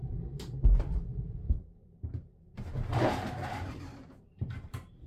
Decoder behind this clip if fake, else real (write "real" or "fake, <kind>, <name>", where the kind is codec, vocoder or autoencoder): fake, vocoder, BigVGAN v2